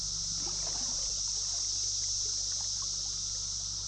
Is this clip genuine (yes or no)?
yes